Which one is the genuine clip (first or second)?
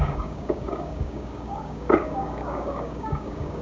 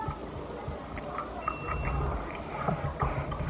second